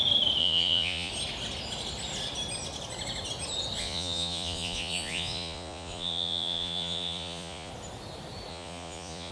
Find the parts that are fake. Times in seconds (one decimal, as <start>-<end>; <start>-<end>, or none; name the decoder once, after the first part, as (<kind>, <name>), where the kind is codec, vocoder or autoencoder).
0.4-1.1 (vocoder, Vocos); 3.8-7.7; 8.5-9.3